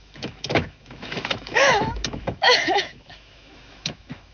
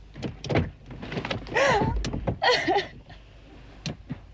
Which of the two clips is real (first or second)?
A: second